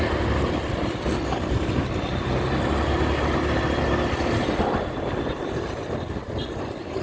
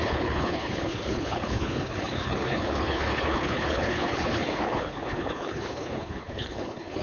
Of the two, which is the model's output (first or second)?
second